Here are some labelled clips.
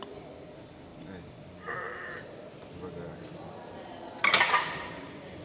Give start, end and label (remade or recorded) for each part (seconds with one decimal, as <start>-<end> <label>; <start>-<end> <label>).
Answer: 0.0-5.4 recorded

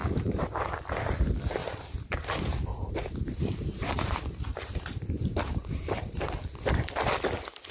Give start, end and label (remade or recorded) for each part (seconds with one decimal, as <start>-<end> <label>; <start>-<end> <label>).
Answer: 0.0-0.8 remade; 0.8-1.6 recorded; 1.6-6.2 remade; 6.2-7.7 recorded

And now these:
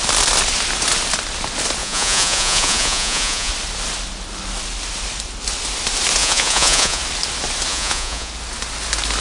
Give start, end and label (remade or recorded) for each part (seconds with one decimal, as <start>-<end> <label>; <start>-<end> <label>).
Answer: 0.0-1.8 recorded; 1.8-3.5 remade; 3.5-6.2 recorded; 6.2-7.0 remade; 7.0-7.7 recorded; 7.7-8.3 remade; 8.3-9.2 recorded

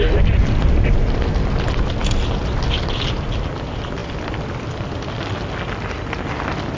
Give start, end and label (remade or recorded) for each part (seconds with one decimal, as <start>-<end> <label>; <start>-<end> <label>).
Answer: 0.0-6.8 recorded